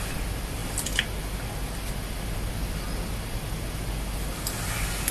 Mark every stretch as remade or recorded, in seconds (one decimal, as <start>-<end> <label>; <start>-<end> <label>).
0.0-5.1 recorded